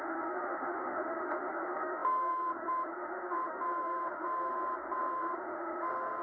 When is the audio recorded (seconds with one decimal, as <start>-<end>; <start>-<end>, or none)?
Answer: 4.5-5.1